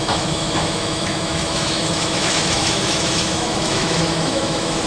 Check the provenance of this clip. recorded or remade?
remade